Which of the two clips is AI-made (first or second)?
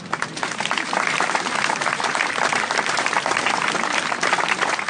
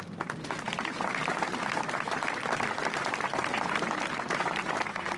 second